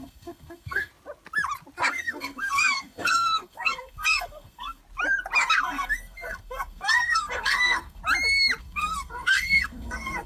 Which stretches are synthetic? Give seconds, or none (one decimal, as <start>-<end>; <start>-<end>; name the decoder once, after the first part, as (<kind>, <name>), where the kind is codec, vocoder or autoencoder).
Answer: 0.0-0.9 (codec, SNAC); 1.9-4.8; 5.6-8.0; 8.6-10.3